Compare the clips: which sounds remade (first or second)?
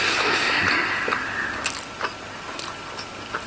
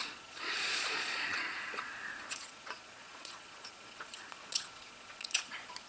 second